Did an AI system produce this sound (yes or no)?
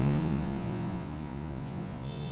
yes